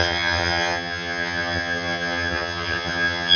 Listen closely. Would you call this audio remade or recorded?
remade